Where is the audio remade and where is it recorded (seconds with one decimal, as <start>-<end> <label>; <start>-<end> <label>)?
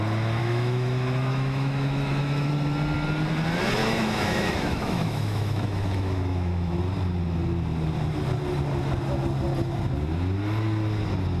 0.0-0.4 recorded; 0.4-2.5 remade; 2.5-3.8 recorded; 3.8-6.8 remade; 6.8-11.4 recorded